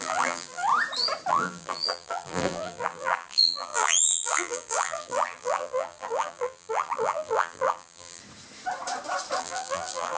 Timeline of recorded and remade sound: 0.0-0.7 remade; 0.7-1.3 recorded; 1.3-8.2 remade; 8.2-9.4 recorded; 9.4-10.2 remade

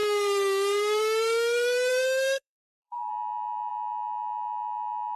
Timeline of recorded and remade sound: 0.0-3.1 remade; 3.1-5.2 recorded

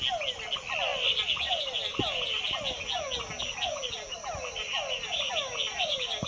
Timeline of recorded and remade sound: 0.0-6.3 recorded

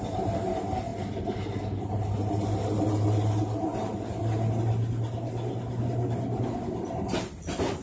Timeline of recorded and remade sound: 0.0-7.8 recorded

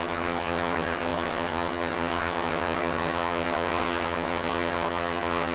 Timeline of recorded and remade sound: 0.0-5.5 remade

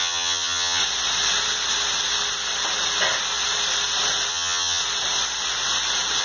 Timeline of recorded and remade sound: 0.0-0.8 remade; 0.8-4.3 recorded; 4.3-4.8 remade; 4.8-6.2 recorded

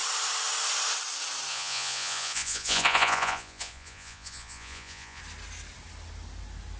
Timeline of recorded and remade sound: 0.0-1.5 recorded; 1.5-5.2 remade; 5.2-6.8 recorded

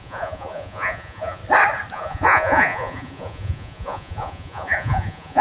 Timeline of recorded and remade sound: 0.0-1.4 remade; 1.4-1.9 recorded; 1.9-5.4 remade